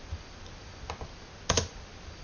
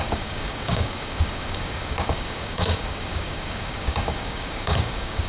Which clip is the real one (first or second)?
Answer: first